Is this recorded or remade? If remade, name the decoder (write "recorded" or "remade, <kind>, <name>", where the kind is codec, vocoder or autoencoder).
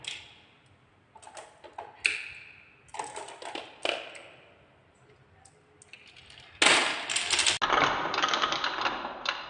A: recorded